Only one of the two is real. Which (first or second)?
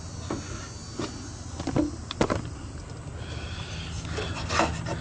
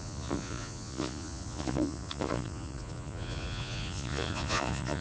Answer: first